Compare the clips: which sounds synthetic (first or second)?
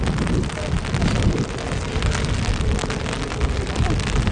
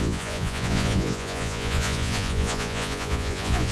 second